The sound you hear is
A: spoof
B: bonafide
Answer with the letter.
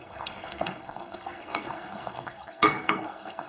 A